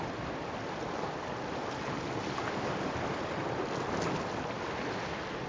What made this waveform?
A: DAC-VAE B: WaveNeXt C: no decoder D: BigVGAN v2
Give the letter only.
C